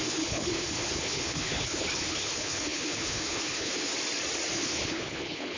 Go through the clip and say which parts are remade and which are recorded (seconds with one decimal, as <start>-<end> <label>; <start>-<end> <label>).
0.0-3.9 remade; 3.9-4.5 recorded; 4.5-5.6 remade